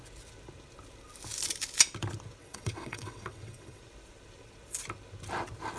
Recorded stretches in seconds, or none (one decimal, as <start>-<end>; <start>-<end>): 0.0-2.4; 3.8-5.8